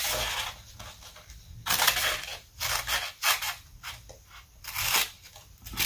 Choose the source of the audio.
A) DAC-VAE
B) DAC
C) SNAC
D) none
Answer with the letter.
D